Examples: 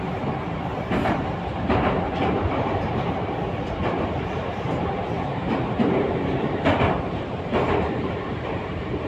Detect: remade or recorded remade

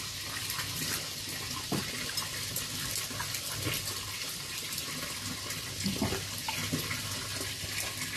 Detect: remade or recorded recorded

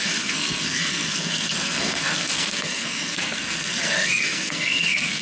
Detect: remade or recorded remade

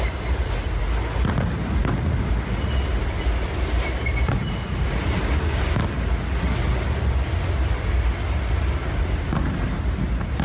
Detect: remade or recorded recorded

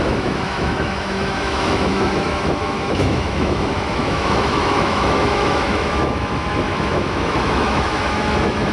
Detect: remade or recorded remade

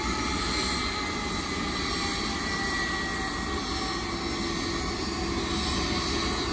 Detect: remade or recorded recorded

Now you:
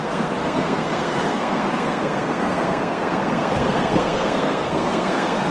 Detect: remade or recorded remade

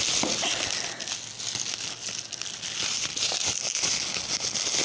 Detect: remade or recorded recorded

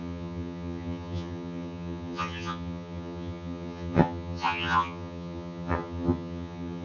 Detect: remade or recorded remade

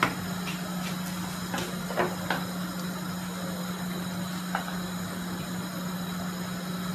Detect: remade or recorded recorded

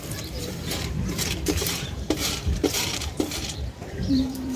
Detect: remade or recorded remade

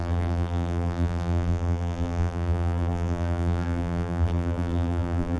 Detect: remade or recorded remade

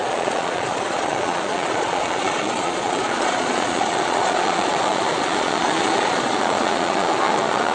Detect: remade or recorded remade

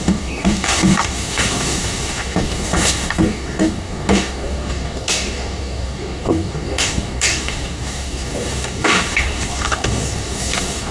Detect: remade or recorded remade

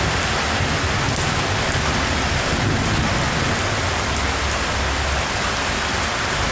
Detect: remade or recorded recorded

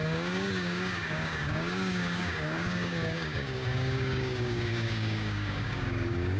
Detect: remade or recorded remade